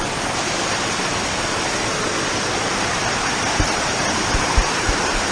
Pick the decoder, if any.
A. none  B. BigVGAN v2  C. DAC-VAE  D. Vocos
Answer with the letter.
B